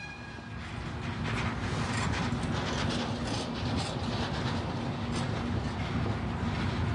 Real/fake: real